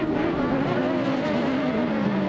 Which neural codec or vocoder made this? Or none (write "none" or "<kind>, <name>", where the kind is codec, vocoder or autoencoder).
none